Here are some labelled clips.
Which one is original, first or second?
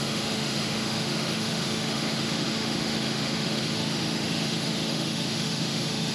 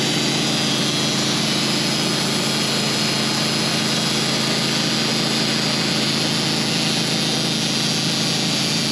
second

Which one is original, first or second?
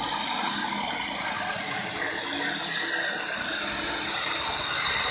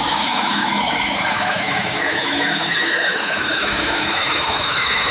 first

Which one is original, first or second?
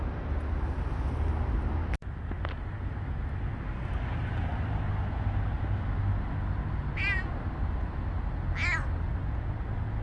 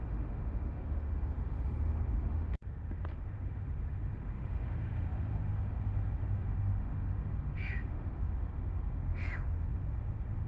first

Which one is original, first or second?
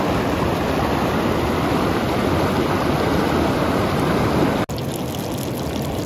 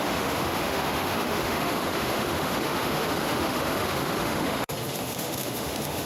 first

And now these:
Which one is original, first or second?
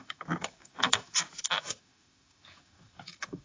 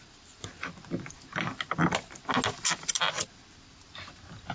second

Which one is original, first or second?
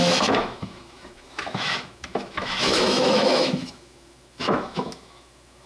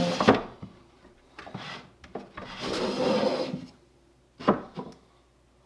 second